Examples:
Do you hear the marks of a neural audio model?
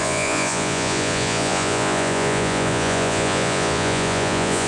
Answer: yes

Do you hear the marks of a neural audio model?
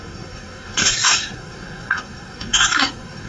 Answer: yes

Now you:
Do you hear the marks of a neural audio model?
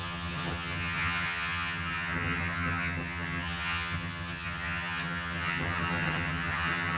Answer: yes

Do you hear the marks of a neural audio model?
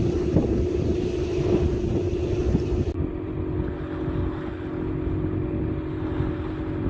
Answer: no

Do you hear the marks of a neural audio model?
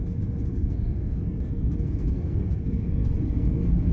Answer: yes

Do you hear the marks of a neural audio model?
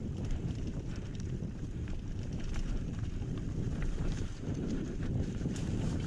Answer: yes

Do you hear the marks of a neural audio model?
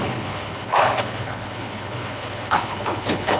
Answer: yes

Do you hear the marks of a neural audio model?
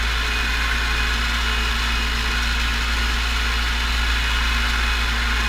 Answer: no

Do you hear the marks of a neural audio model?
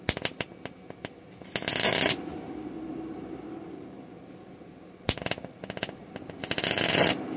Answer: no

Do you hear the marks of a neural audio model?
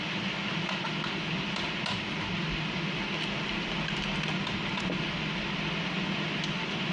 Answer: no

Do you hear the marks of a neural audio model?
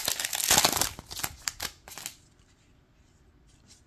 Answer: no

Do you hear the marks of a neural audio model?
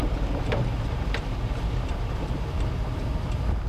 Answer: yes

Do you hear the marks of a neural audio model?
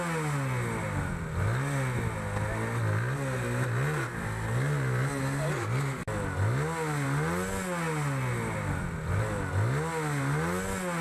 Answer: no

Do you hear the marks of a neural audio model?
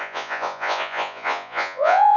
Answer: yes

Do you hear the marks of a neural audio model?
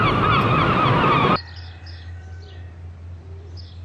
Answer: no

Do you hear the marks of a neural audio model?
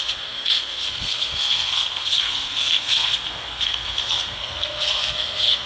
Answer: yes